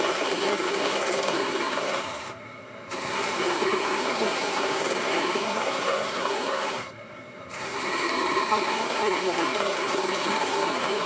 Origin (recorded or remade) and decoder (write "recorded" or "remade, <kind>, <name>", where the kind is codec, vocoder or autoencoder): remade, codec, SNAC